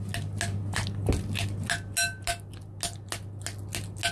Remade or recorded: recorded